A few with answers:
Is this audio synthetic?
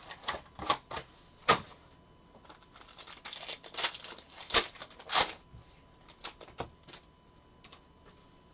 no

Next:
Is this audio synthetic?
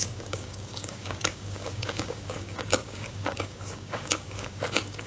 yes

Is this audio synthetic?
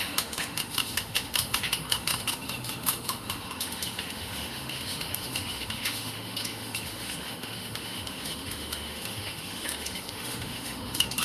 yes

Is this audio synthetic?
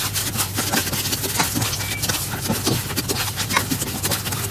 no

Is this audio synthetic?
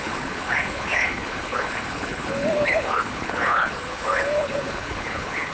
yes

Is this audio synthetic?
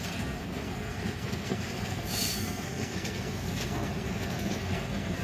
yes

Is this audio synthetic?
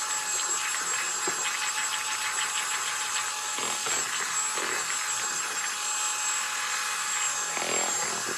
no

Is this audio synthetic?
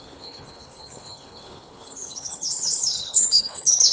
yes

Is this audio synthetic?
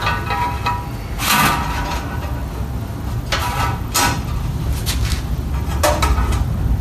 no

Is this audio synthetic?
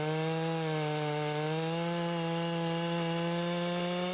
no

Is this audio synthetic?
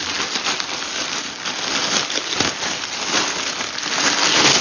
no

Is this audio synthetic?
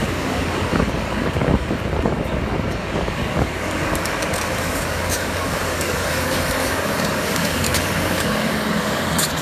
yes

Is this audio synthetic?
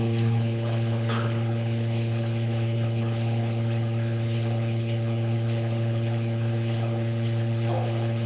yes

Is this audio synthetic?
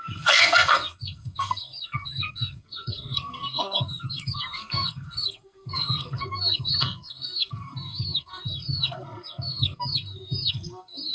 yes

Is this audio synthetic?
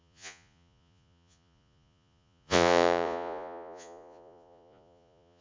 yes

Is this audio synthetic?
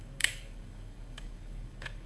yes